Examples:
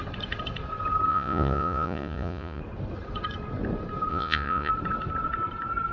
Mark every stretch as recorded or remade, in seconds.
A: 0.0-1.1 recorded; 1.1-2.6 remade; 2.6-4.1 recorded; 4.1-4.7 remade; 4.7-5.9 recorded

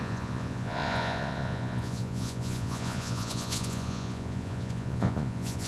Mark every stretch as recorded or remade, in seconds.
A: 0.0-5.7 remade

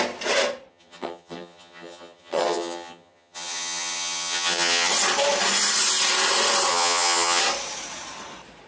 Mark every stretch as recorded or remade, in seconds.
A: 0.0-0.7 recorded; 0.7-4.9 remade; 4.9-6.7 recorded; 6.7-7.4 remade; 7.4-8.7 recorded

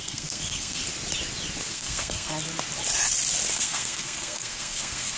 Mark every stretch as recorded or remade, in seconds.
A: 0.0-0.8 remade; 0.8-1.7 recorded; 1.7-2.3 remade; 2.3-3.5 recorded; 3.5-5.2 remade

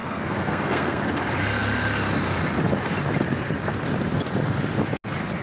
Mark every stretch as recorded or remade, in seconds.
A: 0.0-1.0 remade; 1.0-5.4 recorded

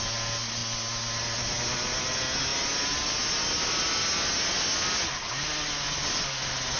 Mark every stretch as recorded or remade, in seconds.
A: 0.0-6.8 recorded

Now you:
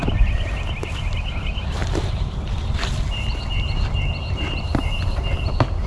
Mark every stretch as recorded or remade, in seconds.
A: 0.0-5.9 recorded